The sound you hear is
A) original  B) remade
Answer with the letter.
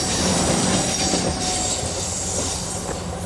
B